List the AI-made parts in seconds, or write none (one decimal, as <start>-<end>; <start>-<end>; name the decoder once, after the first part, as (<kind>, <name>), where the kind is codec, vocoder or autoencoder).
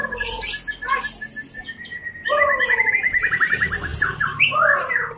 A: 2.9-5.2 (vocoder, BigVGAN v2)